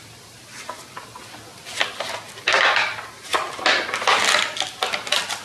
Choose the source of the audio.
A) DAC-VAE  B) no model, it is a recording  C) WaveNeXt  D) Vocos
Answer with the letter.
B